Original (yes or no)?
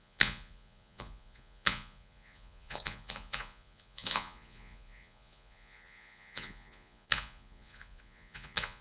no